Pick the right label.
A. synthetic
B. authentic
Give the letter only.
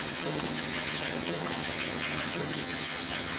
A